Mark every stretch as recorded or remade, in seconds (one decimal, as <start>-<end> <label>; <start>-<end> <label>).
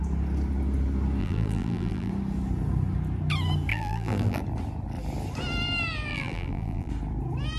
0.0-1.2 recorded; 1.2-2.1 remade; 2.1-3.7 recorded; 3.7-4.4 remade; 4.4-6.1 recorded; 6.1-6.9 remade; 6.9-7.6 recorded